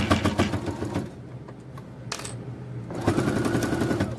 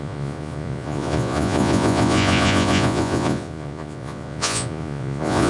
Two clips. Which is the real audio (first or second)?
first